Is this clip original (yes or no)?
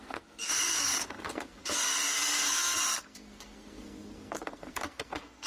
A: no